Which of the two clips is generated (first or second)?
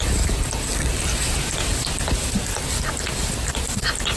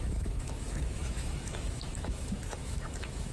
second